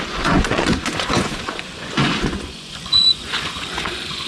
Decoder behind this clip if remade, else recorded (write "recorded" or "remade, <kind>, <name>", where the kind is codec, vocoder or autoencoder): remade, vocoder, Vocos